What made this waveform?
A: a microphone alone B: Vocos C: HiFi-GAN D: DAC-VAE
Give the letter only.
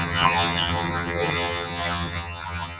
C